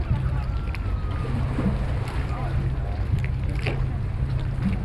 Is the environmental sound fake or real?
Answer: real